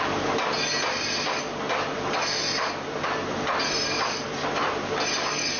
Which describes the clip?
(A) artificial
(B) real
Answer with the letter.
B